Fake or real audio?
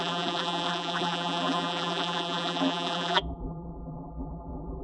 fake